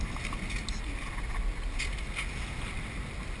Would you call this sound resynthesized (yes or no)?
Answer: no